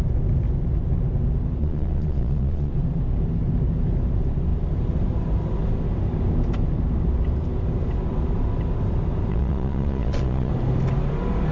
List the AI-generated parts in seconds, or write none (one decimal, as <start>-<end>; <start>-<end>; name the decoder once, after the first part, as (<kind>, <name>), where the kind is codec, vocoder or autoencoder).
1.6-2.7 (vocoder, Vocos); 9.3-10.5